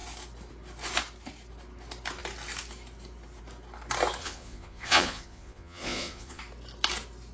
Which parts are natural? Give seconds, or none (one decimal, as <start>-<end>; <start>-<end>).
0.0-4.2; 6.4-7.3